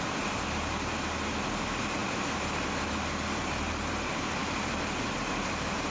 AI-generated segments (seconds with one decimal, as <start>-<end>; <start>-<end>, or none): none